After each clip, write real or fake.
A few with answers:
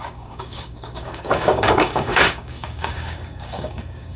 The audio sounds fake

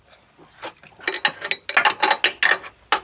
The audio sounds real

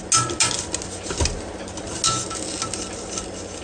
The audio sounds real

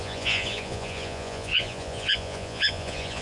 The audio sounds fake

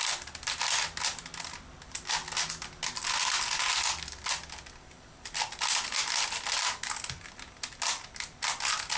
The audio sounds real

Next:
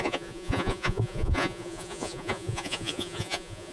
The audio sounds fake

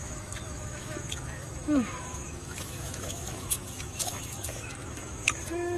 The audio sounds fake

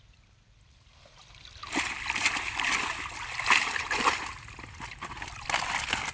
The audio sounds real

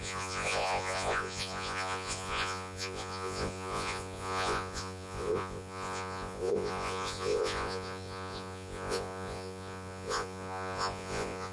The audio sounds fake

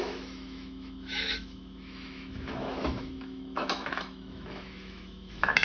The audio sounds fake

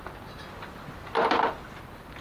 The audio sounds real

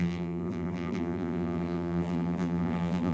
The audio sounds fake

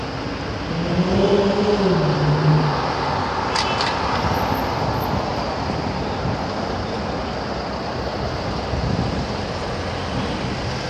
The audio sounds real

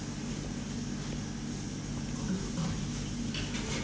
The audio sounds real